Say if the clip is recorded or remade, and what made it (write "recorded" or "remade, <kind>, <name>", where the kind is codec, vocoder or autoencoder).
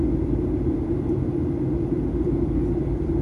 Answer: remade, vocoder, BigVGAN v2